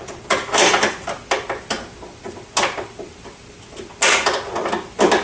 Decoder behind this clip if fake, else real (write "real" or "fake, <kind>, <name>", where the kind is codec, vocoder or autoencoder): real